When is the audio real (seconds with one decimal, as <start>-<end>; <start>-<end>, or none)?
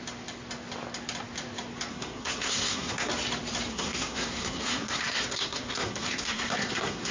0.0-1.9; 3.1-3.7